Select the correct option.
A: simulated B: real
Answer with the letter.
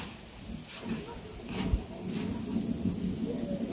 B